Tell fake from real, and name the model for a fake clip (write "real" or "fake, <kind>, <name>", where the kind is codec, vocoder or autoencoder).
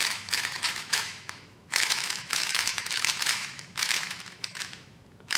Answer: fake, autoencoder, DAC-VAE